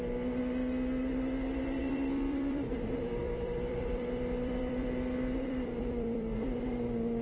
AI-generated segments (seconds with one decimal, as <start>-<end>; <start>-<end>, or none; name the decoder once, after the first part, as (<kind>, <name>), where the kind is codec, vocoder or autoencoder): 1.8-2.7 (vocoder, BigVGAN v2); 3.2-6.6